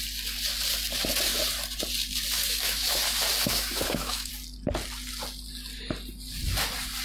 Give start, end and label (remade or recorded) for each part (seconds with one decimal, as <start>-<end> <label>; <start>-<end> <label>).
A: 0.0-2.4 recorded; 2.4-3.0 remade; 3.0-3.5 recorded; 3.5-4.3 remade; 4.3-7.0 recorded